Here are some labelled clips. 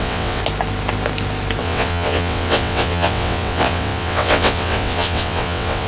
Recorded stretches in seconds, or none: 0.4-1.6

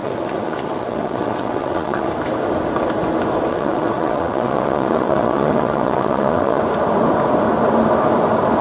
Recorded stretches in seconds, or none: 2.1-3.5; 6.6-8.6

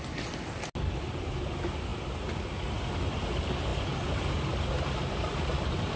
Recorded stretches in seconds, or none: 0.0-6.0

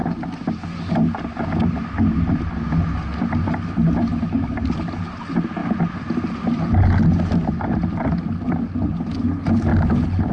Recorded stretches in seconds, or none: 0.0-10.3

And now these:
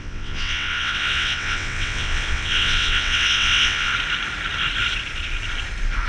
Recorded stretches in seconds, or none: 3.9-6.1